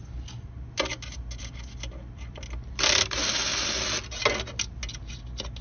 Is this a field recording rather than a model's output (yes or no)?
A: yes